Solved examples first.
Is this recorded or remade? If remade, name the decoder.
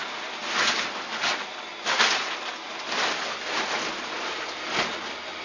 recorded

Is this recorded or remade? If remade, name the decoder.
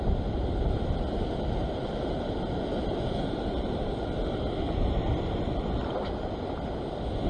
recorded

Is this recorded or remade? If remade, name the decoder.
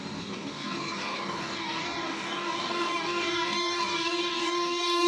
remade, codec, DAC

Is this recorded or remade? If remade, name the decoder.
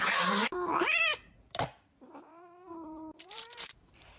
remade, vocoder, BigVGAN v2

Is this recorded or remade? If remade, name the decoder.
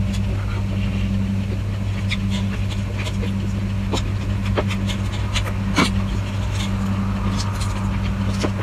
recorded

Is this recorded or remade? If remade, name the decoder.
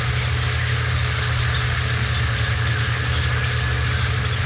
recorded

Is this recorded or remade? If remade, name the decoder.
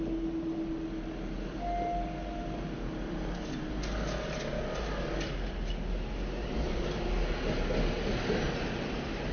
recorded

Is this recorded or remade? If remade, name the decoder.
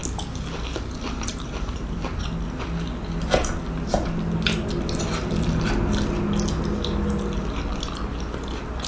recorded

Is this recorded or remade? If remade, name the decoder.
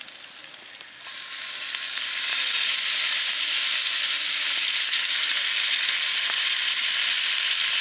recorded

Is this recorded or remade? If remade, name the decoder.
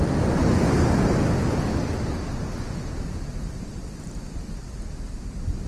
recorded